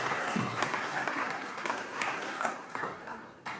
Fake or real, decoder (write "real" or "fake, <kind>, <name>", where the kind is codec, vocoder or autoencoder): fake, codec, SNAC